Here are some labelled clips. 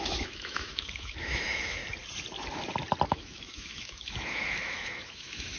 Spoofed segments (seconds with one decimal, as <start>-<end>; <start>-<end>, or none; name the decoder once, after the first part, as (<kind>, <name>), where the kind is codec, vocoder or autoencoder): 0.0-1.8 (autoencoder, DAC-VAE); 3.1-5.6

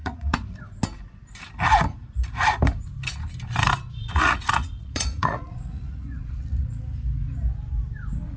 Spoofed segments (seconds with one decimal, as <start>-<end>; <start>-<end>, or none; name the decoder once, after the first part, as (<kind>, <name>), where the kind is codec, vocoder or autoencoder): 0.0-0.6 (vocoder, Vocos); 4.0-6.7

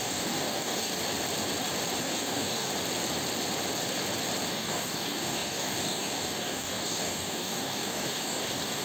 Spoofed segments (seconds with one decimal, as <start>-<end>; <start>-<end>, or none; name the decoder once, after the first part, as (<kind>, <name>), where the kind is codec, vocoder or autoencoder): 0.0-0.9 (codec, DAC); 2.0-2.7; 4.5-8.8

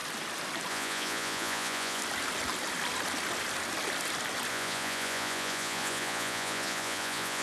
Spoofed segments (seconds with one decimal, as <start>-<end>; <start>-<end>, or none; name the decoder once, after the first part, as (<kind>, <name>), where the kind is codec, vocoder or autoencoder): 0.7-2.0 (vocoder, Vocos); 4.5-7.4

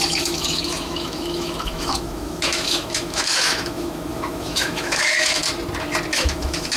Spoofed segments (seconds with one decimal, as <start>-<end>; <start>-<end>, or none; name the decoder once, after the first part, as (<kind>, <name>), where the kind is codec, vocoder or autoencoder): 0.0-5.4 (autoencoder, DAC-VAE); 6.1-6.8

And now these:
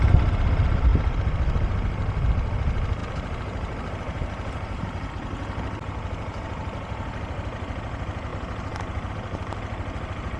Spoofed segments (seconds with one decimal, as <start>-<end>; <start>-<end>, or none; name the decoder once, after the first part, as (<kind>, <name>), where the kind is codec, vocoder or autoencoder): 3.0-5.1 (vocoder, BigVGAN v2)

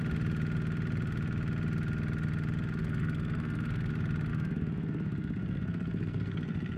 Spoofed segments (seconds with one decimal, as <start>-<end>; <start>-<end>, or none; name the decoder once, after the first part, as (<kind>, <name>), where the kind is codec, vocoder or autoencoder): 2.8-3.9 (codec, SNAC); 4.3-6.8